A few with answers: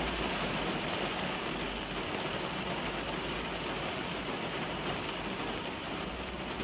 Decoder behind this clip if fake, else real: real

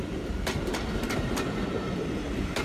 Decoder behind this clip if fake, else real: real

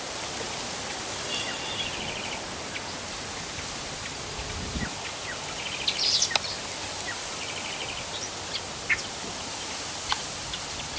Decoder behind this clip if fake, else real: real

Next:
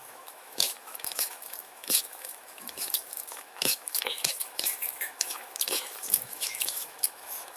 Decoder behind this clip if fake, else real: fake, autoencoder, DAC-VAE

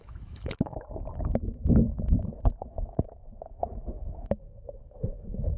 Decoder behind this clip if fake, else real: fake, autoencoder, DAC-VAE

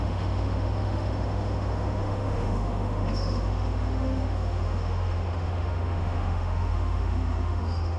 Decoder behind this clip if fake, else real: fake, autoencoder, DAC-VAE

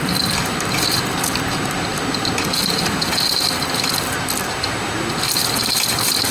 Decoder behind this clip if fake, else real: real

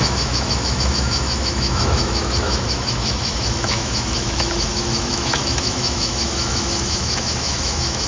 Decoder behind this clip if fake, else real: fake, autoencoder, DAC-VAE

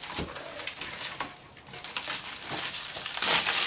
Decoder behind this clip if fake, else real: real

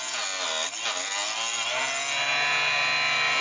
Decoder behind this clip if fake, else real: real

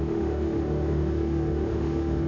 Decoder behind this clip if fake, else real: fake, autoencoder, DAC-VAE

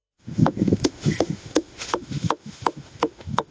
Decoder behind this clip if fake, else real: fake, autoencoder, DAC-VAE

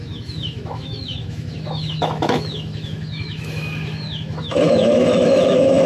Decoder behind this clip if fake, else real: fake, autoencoder, DAC-VAE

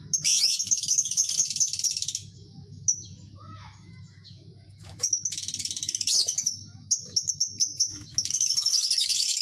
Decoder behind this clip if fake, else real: fake, autoencoder, DAC-VAE